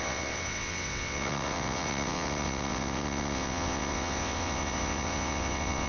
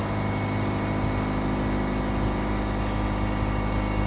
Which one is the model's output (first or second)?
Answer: first